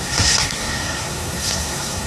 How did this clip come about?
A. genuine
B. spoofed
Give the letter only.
B